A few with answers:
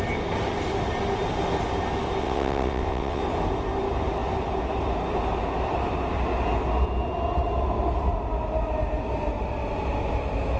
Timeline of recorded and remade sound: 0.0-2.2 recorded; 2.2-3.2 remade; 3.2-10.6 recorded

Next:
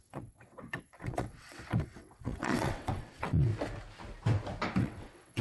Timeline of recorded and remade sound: 0.0-3.5 remade; 3.5-4.8 recorded; 4.8-5.4 remade

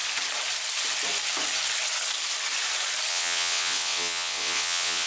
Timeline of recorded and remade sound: 0.0-3.1 recorded; 3.1-5.1 remade